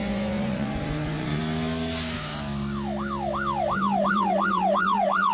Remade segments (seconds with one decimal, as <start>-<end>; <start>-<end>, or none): 0.0-1.4; 4.1-5.3